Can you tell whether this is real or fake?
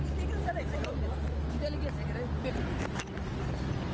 real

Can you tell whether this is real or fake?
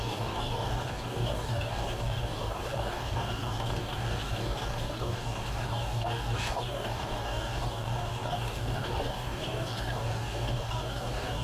fake